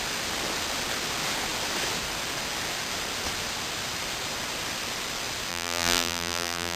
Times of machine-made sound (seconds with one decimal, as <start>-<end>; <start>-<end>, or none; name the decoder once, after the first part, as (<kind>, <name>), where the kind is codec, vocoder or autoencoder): 5.5-6.8 (vocoder, BigVGAN v2)

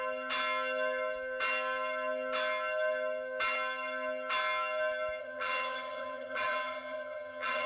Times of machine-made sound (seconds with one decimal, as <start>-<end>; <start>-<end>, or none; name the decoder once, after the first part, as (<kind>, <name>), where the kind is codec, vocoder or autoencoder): 5.2-7.7 (vocoder, HiFi-GAN)

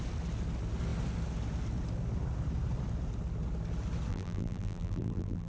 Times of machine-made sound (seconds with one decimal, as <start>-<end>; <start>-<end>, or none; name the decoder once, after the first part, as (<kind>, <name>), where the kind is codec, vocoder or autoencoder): 4.1-5.5 (vocoder, BigVGAN v2)

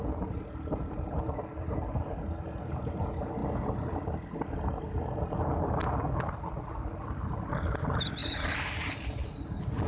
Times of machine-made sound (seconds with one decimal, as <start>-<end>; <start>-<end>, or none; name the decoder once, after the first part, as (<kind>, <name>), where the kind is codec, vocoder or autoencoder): none

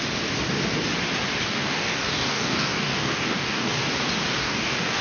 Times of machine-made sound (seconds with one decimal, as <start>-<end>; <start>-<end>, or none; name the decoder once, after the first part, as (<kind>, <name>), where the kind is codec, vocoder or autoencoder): 1.4-3.8 (codec, DAC); 4.4-5.0

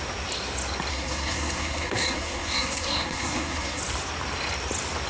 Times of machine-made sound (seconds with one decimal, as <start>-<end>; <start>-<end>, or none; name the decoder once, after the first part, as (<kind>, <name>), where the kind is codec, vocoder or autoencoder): 0.9-3.8 (codec, SNAC)

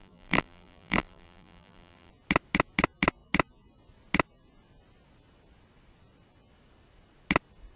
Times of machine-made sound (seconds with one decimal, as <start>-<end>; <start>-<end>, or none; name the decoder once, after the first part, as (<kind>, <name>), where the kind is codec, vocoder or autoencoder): 0.0-2.1 (vocoder, BigVGAN v2)